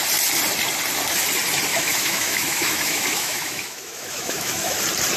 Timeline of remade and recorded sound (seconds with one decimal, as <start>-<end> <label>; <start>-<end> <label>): 0.0-1.7 recorded; 1.7-4.8 remade; 4.8-5.2 recorded